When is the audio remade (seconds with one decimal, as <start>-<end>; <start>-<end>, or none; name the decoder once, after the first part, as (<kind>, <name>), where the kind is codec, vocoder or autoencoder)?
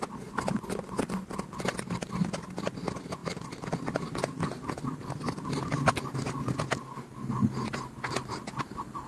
none